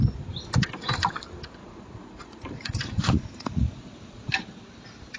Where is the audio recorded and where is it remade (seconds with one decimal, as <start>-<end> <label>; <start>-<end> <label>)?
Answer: 0.0-1.6 recorded; 1.6-4.3 remade; 4.3-5.2 recorded